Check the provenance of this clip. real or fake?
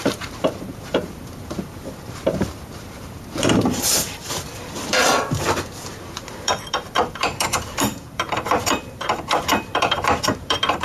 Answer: fake